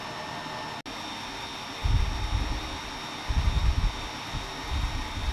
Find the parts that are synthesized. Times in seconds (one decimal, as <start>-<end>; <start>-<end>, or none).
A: none